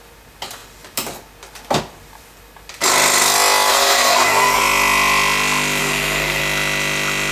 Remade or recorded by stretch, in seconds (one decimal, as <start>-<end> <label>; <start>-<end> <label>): 0.0-3.7 recorded; 3.7-4.6 remade; 4.6-5.8 recorded; 5.8-6.4 remade; 6.4-7.3 recorded